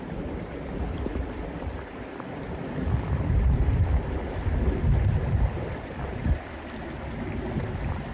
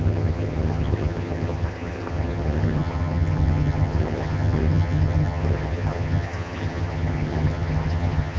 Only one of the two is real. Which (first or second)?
first